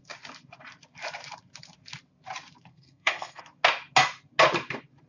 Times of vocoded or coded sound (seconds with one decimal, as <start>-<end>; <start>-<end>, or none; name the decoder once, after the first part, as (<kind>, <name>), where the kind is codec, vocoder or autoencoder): 2.7-3.4 (codec, SNAC)